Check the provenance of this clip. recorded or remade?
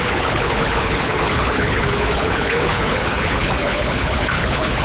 remade